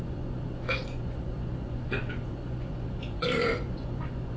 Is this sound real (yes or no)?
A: no